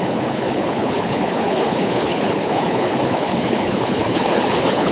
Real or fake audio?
fake